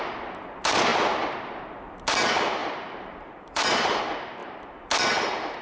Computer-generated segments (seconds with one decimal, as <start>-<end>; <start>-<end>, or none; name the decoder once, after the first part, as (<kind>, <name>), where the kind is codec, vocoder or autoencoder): 2.6-4.0 (vocoder, BigVGAN v2)